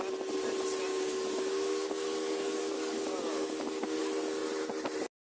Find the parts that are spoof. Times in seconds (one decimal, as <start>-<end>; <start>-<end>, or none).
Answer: 0.9-4.0

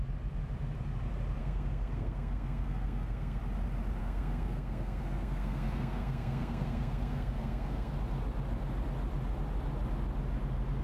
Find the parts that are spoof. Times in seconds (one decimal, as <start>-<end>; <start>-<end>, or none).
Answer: 1.4-3.4; 4.0-7.9

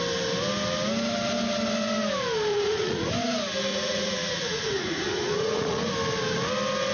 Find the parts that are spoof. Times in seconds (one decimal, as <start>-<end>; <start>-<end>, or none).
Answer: 2.5-3.1; 3.7-5.9